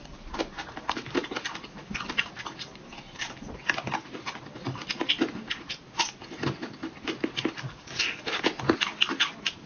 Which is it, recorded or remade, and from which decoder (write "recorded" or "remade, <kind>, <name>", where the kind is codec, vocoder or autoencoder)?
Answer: recorded